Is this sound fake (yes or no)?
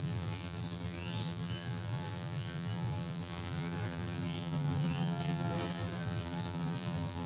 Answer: yes